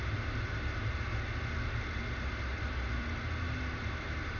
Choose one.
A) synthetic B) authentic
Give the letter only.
B